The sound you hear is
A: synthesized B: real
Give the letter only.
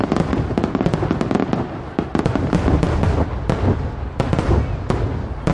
B